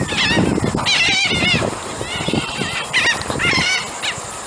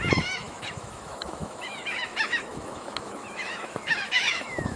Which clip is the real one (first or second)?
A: first